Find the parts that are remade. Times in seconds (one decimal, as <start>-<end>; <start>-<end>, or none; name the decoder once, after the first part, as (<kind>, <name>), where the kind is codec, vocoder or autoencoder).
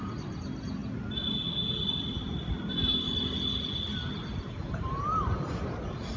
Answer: 5.1-5.8 (vocoder, BigVGAN v2)